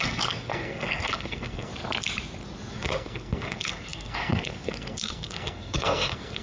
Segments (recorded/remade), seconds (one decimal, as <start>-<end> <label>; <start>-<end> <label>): 0.0-1.7 remade; 1.7-2.7 recorded; 2.7-6.4 remade